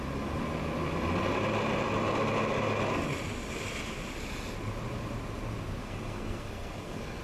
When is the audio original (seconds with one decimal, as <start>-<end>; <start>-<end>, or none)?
0.0-5.8

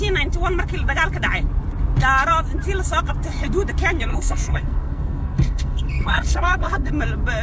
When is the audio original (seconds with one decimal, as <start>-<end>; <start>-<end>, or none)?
0.0-4.1; 6.9-7.4

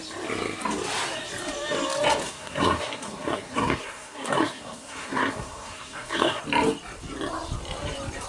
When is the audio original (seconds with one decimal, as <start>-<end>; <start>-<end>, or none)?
0.0-2.2; 6.4-8.3

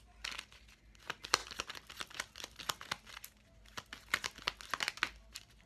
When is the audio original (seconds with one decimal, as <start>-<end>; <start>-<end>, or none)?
0.0-5.7

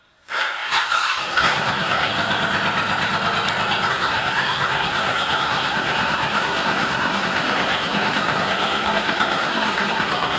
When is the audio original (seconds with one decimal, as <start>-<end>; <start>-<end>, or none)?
2.1-3.9